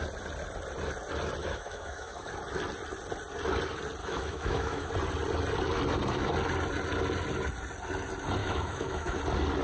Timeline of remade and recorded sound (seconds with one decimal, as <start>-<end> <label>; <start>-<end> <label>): 0.0-1.4 recorded; 1.4-2.3 remade; 2.3-4.0 recorded; 4.0-4.9 remade; 4.9-8.4 recorded; 8.4-9.2 remade; 9.2-9.6 recorded